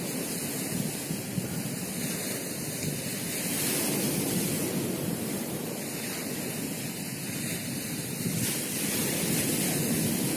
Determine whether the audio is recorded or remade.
recorded